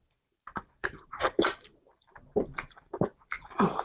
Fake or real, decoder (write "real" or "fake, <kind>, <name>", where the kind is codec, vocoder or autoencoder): fake, vocoder, BigVGAN v2